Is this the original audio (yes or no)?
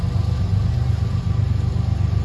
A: yes